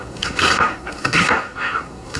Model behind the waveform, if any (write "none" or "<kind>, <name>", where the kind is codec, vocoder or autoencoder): codec, SNAC